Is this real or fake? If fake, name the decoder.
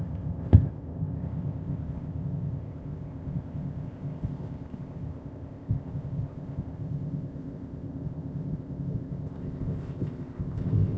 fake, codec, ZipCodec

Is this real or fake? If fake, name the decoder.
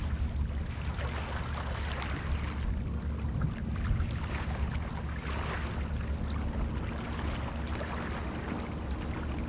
real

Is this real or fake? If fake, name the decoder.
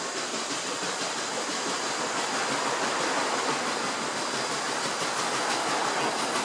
real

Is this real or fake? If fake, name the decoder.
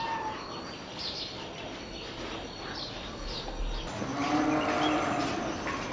real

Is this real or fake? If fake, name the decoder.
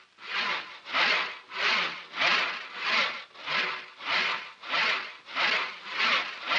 real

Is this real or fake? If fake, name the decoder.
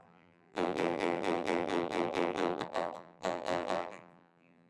fake, vocoder, BigVGAN v2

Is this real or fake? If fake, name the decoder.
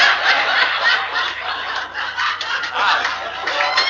real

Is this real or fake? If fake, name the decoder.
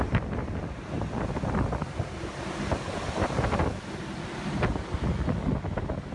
real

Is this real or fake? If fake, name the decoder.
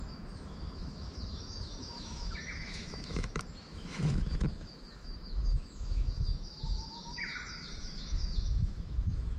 fake, autoencoder, DAC-VAE